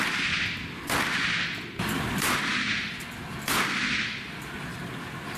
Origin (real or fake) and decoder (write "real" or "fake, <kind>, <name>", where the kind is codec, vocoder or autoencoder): real